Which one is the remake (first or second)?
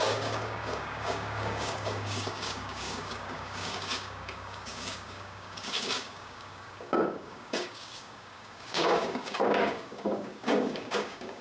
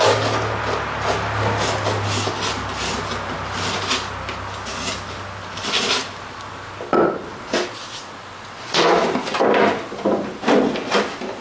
first